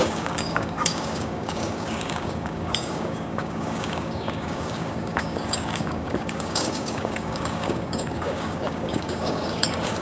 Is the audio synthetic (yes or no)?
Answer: yes